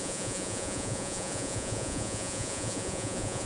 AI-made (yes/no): yes